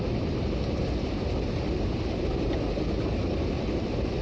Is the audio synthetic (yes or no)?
no